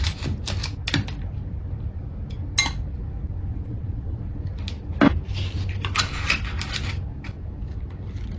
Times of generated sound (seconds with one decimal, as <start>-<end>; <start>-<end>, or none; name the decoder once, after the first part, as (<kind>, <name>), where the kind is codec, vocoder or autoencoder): 3.5-4.4 (vocoder, Vocos)